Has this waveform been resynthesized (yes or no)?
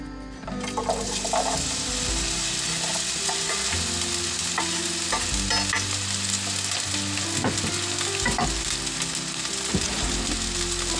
no